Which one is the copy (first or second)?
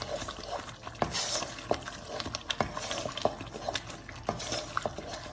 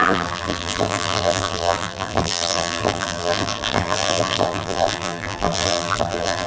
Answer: second